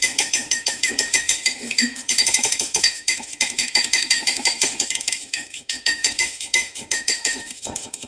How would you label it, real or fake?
fake